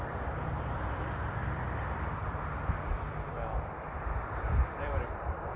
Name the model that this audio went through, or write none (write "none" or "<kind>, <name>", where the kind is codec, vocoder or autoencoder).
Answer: vocoder, BigVGAN v2